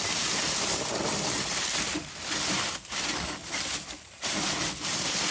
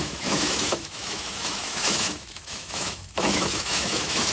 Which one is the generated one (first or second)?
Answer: second